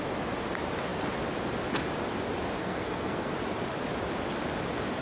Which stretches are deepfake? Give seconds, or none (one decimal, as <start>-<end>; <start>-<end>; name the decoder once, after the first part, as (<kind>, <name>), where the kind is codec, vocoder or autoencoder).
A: 2.6-3.3 (codec, SNAC)